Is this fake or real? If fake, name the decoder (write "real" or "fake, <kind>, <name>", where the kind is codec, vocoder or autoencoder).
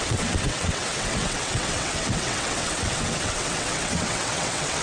fake, vocoder, WaveNeXt